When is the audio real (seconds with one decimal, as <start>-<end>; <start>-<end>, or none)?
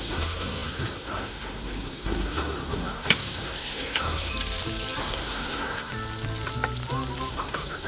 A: 4.3-5.0; 5.9-7.3